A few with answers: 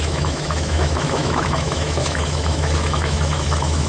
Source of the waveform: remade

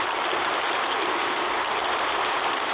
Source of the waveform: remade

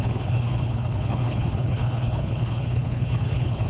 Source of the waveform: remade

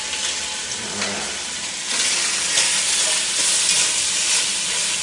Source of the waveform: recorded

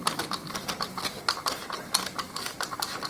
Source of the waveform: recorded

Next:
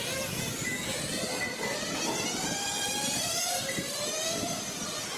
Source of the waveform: recorded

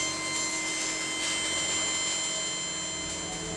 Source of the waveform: recorded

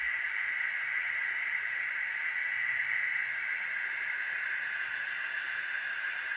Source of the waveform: recorded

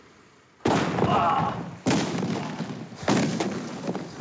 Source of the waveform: recorded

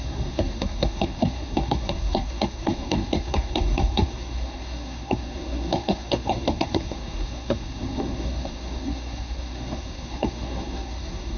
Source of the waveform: remade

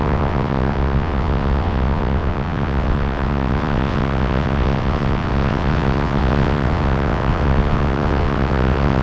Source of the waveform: remade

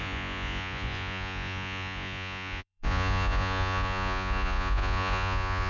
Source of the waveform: remade